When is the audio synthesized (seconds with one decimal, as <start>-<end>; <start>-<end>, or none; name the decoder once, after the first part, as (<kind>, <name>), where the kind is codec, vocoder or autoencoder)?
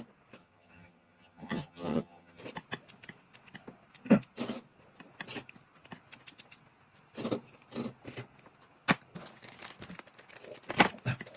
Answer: 0.4-2.4 (vocoder, HiFi-GAN)